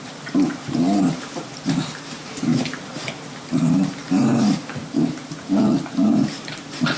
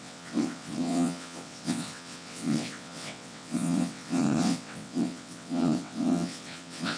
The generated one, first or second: second